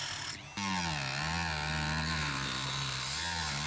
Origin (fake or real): real